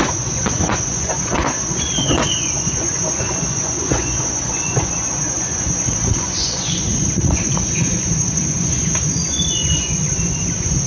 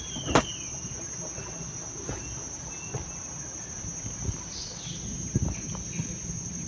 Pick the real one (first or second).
second